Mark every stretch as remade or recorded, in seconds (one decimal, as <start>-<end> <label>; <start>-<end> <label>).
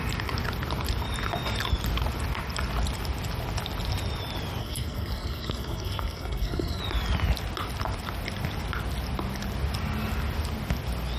0.0-4.6 recorded; 4.6-6.8 remade; 6.8-11.2 recorded